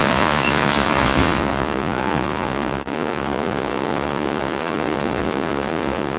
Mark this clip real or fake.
fake